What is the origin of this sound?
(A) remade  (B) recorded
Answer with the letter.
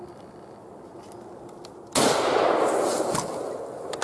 B